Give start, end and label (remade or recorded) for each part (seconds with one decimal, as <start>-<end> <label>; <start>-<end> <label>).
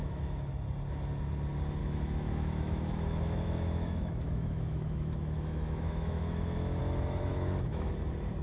0.0-0.5 remade; 0.5-1.8 recorded; 1.8-6.8 remade; 6.8-7.3 recorded; 7.3-7.9 remade; 7.9-8.4 recorded